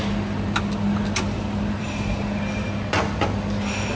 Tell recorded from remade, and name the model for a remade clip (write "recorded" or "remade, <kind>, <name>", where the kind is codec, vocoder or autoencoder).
recorded